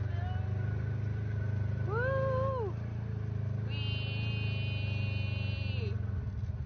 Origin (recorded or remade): recorded